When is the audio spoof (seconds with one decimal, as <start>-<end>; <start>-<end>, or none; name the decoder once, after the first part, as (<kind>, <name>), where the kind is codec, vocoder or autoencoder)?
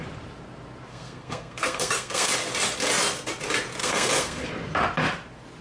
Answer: 0.9-2.3 (codec, SNAC); 3.8-4.4